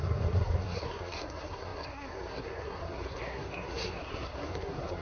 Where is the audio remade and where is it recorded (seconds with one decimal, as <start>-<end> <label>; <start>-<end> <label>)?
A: 0.0-5.0 remade